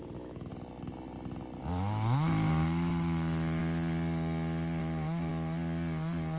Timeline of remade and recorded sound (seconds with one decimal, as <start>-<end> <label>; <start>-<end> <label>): 0.0-0.5 remade; 0.5-1.6 recorded; 1.6-3.6 remade; 3.6-4.8 recorded; 4.8-5.3 remade; 5.3-6.4 recorded